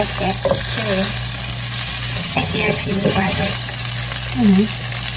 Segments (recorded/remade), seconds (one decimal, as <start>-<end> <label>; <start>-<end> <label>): 0.0-2.2 recorded; 2.2-3.5 remade; 3.5-5.2 recorded